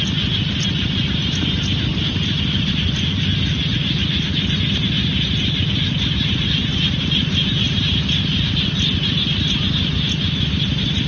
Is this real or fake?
real